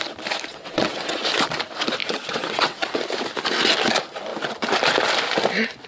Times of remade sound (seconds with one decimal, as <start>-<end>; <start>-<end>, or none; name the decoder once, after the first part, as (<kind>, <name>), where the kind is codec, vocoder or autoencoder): 0.5-1.2 (vocoder, WaveNeXt); 2.0-3.0